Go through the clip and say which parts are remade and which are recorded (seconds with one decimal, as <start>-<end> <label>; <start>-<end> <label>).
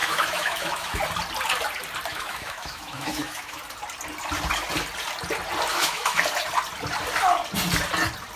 0.0-1.0 remade; 1.0-2.1 recorded; 2.1-3.6 remade; 3.6-5.7 recorded; 5.7-6.2 remade; 6.2-8.4 recorded